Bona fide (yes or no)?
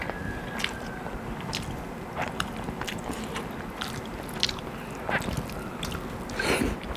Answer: yes